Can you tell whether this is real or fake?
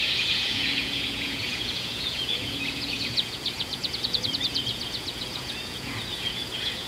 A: fake